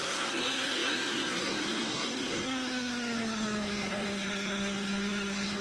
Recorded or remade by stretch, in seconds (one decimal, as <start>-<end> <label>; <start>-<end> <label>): 0.0-5.6 remade